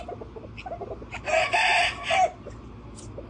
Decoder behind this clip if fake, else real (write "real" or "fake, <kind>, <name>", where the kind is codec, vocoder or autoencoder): real